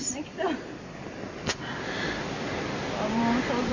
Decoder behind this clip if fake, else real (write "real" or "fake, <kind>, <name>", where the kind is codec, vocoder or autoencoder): real